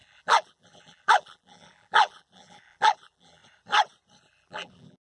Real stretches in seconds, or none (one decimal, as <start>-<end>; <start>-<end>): 3.4-4.2